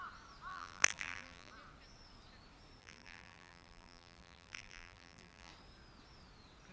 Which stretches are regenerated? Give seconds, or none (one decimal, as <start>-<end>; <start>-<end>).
0.5-1.5; 2.8-5.5